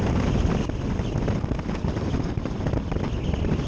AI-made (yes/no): no